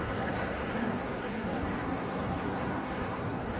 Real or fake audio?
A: fake